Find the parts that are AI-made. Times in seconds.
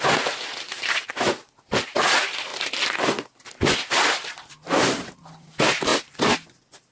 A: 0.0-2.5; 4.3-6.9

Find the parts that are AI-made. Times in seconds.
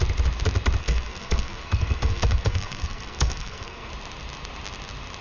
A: 0.8-3.9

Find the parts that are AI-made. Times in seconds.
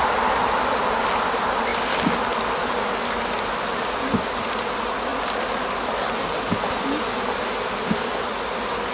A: none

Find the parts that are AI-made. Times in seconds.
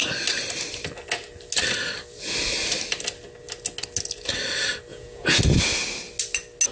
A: 4.9-5.4